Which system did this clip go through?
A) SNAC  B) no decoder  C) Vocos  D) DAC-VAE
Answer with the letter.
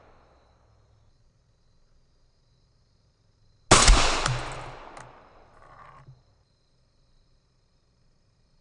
B